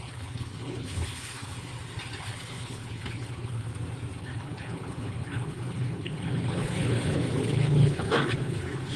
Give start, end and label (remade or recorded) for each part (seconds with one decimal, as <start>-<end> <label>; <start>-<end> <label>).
0.0-1.7 remade; 1.7-2.2 recorded; 2.2-3.7 remade; 3.7-4.2 recorded; 4.2-9.0 remade